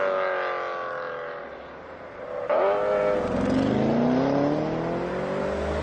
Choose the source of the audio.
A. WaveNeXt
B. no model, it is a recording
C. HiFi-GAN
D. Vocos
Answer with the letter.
B